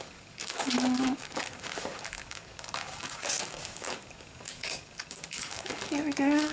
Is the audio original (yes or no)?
no